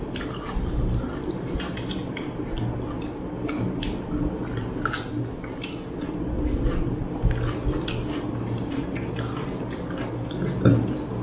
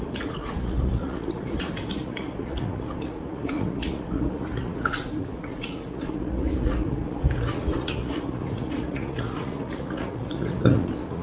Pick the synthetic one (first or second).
second